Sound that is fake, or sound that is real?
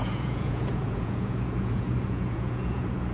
fake